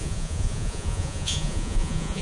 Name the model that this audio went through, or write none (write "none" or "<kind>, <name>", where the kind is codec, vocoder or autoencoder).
vocoder, Vocos